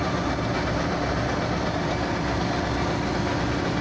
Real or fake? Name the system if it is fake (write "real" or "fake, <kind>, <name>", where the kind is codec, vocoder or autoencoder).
real